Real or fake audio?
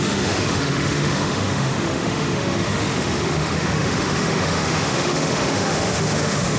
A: fake